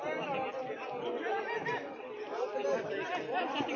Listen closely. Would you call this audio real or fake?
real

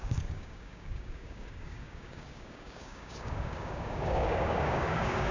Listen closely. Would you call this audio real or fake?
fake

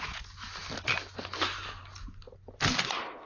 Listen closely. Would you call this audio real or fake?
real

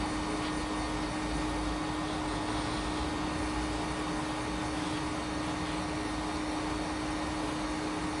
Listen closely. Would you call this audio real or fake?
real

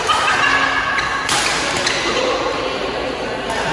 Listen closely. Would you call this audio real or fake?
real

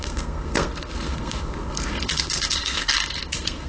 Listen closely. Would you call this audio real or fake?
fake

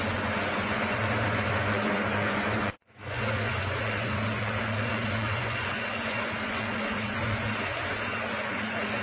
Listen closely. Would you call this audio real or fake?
fake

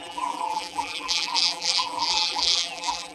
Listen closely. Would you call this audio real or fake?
fake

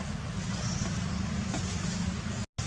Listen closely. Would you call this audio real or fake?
real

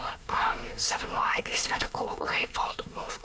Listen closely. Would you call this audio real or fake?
fake